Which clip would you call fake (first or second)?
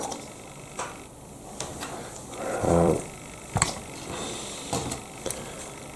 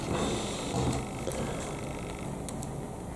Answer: first